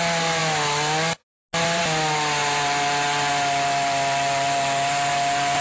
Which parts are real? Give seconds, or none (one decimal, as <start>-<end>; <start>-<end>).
0.0-5.6